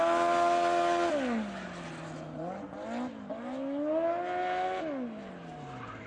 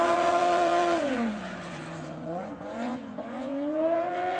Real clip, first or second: first